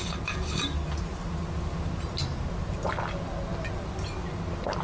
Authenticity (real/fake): real